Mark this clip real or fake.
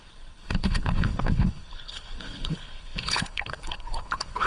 fake